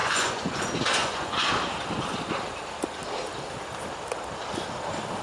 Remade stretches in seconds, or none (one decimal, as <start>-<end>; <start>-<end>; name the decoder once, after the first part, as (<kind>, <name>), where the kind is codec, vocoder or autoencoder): 0.0-0.6 (vocoder, Vocos); 1.0-1.5